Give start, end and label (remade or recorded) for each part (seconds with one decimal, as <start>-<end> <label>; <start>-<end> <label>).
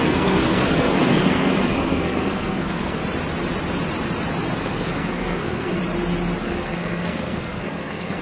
0.0-3.0 remade; 3.0-4.6 recorded; 4.6-5.8 remade; 5.8-6.4 recorded; 6.4-8.2 remade